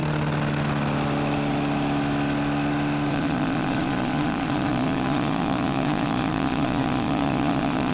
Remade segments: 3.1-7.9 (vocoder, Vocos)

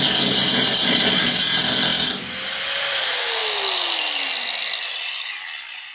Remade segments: 0.8-1.4 (vocoder, Vocos)

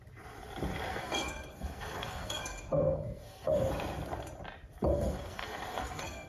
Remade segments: 0.9-3.7 (codec, SNAC); 4.9-6.3

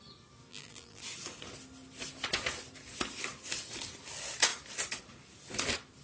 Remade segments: 0.5-1.0 (vocoder, BigVGAN v2)

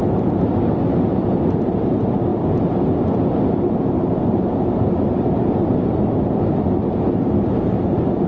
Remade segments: none

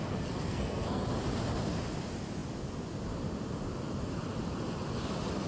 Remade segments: 0.0-1.1 (codec, SNAC)